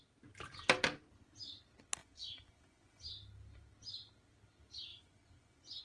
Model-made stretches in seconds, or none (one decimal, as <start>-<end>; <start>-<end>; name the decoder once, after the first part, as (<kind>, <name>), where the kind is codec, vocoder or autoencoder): 2.0-3.1 (vocoder, Vocos); 4.9-5.8